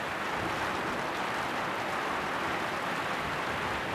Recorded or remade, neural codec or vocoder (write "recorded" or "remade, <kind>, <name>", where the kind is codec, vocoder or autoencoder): recorded